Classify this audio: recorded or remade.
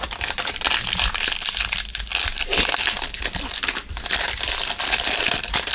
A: recorded